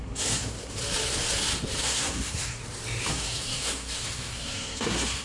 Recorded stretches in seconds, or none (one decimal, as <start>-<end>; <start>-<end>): 0.8-1.8; 2.6-3.1